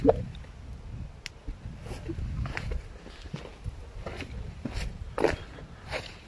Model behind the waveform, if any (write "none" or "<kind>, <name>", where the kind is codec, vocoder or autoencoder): none